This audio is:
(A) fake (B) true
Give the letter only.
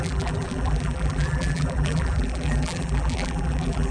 A